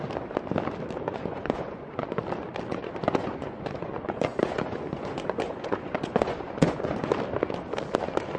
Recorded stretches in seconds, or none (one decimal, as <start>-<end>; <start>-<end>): 0.0-1.1; 2.2-2.7; 7.1-8.4